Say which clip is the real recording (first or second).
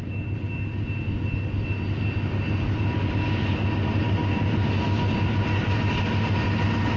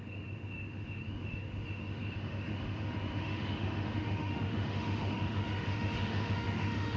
first